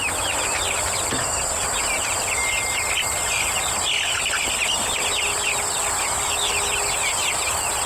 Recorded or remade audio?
recorded